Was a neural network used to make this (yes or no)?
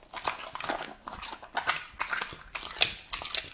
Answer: no